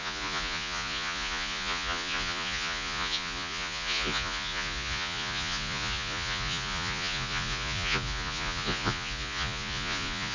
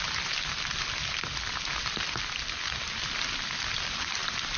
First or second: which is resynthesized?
first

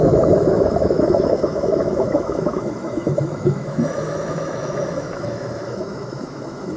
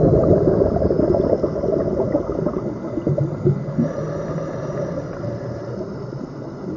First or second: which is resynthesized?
first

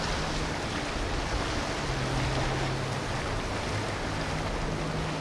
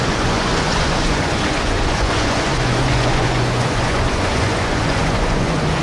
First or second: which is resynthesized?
second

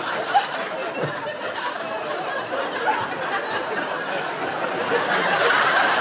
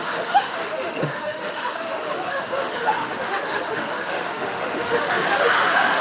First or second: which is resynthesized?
second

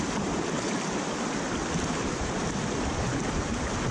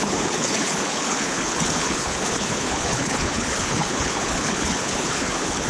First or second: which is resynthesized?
second